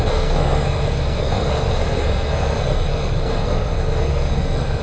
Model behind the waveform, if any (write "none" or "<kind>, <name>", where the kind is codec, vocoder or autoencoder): codec, SNAC